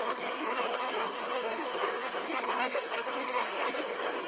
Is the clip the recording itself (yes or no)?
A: no